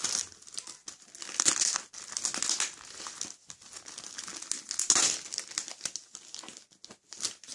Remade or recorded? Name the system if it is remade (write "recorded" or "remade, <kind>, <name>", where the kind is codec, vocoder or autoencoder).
recorded